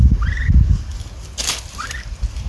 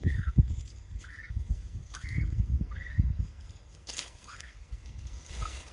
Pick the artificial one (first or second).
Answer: second